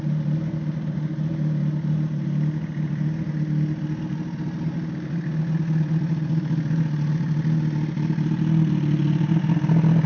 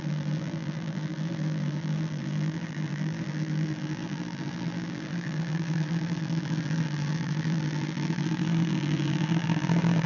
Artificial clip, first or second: second